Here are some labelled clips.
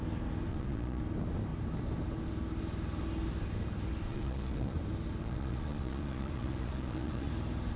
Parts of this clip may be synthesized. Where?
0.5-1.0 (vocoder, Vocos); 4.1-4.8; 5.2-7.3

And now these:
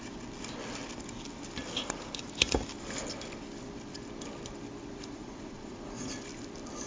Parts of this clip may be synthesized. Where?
4.9-6.1 (vocoder, Vocos)

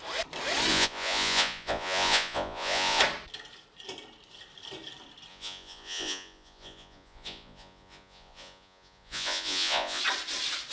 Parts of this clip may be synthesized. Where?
0.7-3.0 (vocoder, Vocos); 5.3-10.0

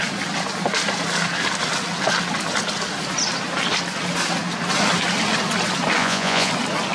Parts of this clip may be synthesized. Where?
6.0-6.5 (vocoder, Vocos)

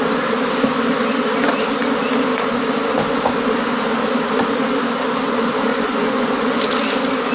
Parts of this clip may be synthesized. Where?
5.7-6.6 (vocoder, Vocos)

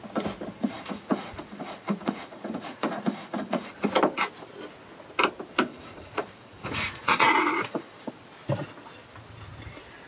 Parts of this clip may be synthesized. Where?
0.6-3.7 (vocoder, Vocos); 5.7-8.1